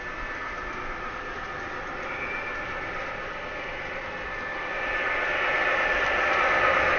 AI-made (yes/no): no